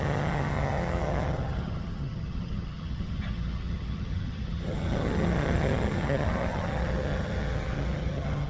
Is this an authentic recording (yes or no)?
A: no